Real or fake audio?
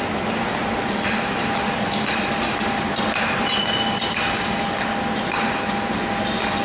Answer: real